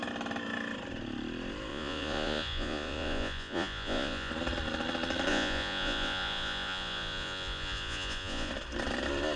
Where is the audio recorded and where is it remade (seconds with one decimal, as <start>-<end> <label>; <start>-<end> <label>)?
0.0-1.7 recorded; 1.7-4.3 remade; 4.3-5.3 recorded; 5.3-8.5 remade; 8.5-9.4 recorded